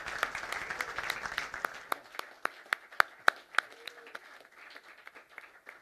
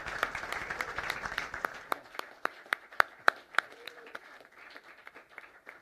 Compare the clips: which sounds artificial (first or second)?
second